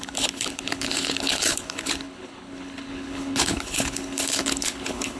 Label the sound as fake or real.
fake